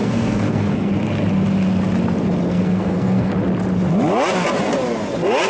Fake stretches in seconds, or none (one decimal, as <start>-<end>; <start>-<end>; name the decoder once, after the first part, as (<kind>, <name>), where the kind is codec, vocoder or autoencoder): 0.0-0.9 (codec, SNAC); 2.5-3.3